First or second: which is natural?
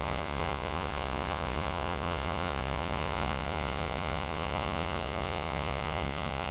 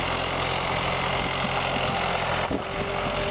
second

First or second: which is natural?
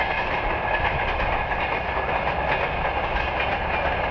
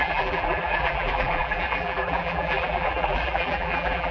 first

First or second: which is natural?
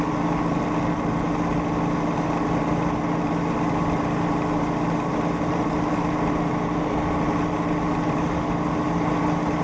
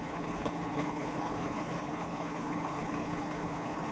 first